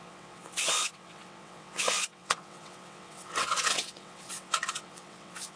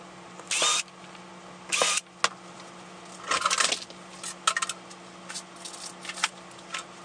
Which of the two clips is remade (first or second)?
first